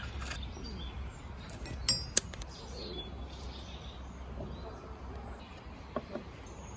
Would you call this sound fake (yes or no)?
no